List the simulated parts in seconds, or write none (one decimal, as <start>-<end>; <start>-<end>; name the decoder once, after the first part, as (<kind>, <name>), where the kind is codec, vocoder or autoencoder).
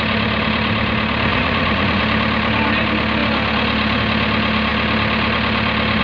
1.3-2.0 (vocoder, Vocos)